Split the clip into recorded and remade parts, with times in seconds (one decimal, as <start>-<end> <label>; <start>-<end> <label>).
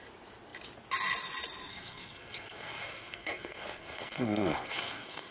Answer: 0.0-1.7 recorded; 1.7-5.3 remade